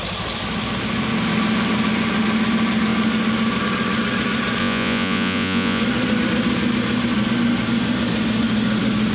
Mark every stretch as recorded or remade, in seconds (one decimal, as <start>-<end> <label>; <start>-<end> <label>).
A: 0.0-4.6 recorded; 4.6-5.8 remade; 5.8-9.1 recorded